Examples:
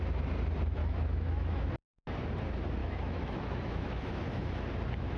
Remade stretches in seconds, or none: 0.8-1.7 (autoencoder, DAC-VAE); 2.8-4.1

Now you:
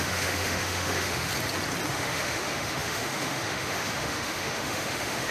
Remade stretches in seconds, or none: 0.0-1.3 (autoencoder, DAC-VAE); 1.9-5.3

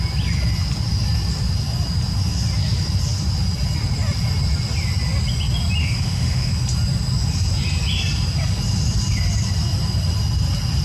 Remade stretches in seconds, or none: 5.8-6.5 (autoencoder, DAC-VAE)

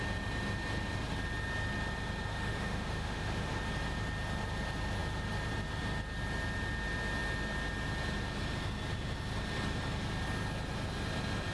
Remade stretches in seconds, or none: 2.3-3.6 (autoencoder, DAC-VAE)

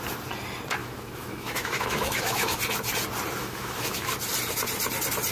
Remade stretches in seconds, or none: 0.8-2.6 (autoencoder, DAC-VAE); 3.4-4.1

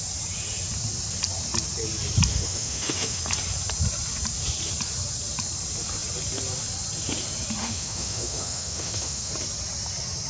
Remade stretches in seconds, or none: 2.3-3.2 (autoencoder, DAC-VAE); 7.6-9.3